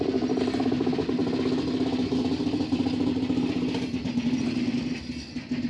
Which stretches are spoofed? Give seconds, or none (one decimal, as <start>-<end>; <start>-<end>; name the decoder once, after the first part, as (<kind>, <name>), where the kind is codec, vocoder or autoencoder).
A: none